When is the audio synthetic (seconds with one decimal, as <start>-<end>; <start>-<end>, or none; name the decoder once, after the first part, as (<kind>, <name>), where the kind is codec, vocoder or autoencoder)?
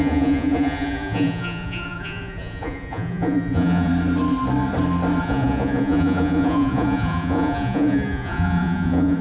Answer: 0.0-3.9 (vocoder, Vocos); 5.2-9.2